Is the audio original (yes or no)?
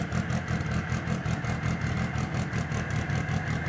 yes